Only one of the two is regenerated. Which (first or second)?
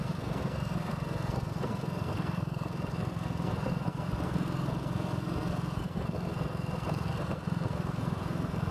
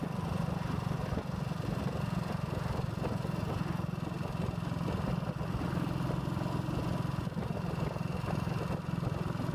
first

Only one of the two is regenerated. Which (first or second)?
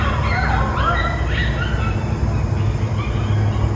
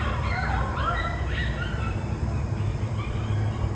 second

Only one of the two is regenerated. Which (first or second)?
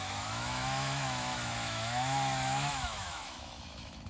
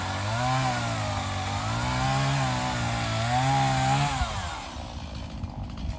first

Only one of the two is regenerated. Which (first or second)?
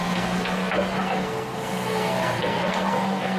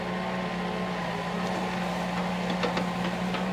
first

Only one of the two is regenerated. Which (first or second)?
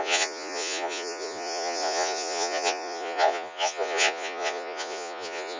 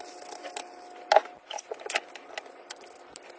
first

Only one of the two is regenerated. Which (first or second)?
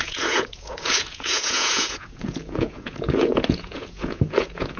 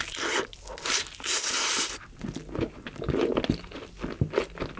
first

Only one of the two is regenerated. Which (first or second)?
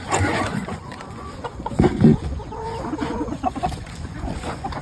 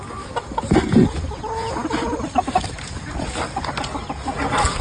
first